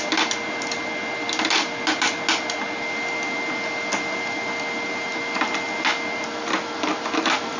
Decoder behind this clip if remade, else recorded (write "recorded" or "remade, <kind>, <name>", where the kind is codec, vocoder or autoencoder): recorded